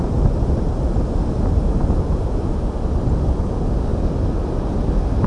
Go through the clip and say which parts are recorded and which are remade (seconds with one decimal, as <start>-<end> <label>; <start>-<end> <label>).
0.0-5.3 recorded

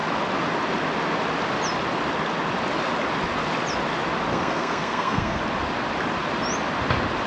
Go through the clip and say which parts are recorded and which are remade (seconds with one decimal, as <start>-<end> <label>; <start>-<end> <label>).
0.0-4.3 recorded; 4.3-5.4 remade; 5.4-7.3 recorded